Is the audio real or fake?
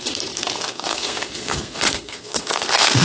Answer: fake